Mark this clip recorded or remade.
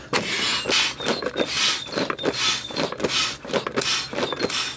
recorded